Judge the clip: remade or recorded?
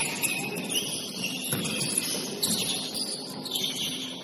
recorded